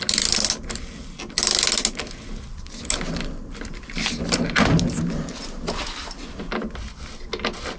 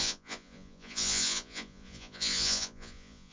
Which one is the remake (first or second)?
second